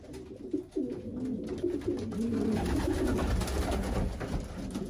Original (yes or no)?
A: yes